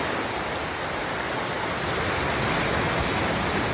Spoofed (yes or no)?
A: no